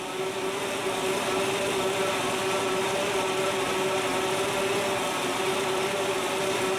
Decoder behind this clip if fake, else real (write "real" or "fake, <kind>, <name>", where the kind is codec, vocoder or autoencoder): real